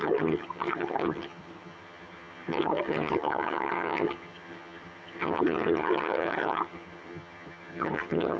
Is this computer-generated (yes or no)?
yes